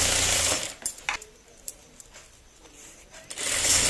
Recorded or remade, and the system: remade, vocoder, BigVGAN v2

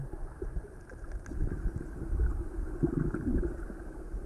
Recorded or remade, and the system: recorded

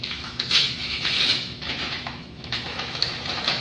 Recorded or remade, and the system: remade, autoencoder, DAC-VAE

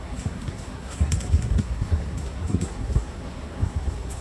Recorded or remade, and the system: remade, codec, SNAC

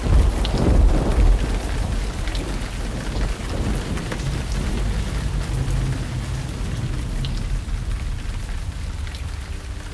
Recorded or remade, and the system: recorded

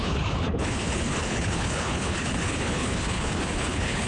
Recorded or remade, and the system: remade, codec, HILCodec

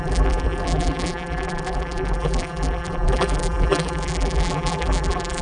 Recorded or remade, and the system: remade, vocoder, BigVGAN v2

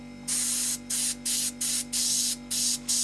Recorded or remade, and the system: recorded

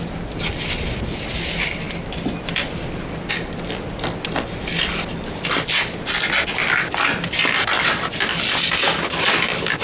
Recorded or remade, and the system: recorded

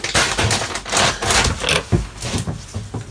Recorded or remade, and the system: recorded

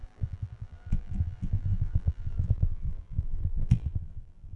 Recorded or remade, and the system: remade, vocoder, BigVGAN v2